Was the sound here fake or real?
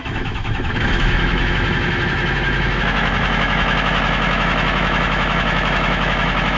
fake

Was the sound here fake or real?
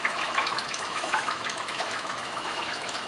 fake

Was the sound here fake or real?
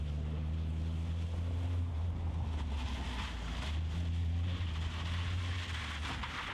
real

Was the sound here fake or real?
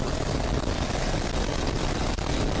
real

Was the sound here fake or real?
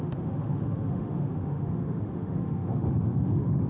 fake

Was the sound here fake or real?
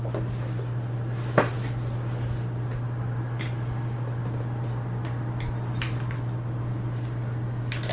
real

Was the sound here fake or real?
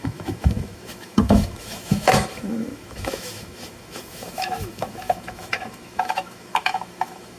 fake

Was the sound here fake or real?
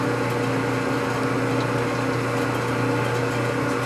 real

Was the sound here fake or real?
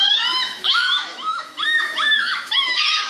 fake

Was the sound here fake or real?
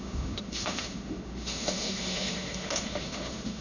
fake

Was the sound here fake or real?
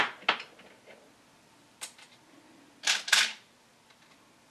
real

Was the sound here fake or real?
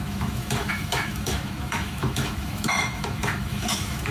fake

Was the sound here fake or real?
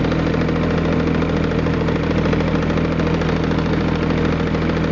real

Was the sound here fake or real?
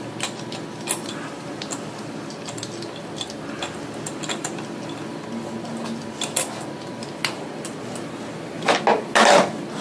real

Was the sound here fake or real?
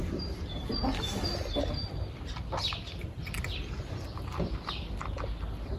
real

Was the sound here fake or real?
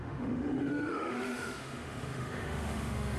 fake